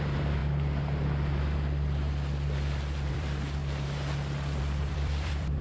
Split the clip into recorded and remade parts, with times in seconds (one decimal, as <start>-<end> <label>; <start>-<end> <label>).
0.0-0.4 remade; 0.4-3.1 recorded; 3.1-3.6 remade; 3.6-4.6 recorded; 4.6-5.6 remade

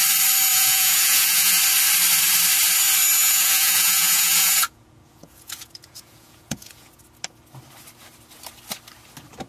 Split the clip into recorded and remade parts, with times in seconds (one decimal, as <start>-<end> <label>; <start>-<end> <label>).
0.0-0.5 recorded; 0.5-1.6 remade; 1.6-3.2 recorded; 3.2-6.9 remade; 6.9-9.5 recorded